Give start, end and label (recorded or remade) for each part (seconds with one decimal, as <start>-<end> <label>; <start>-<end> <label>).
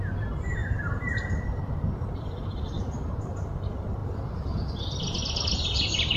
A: 0.0-6.2 remade